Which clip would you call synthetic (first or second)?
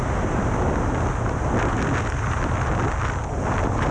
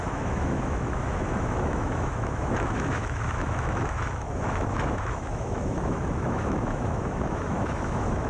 second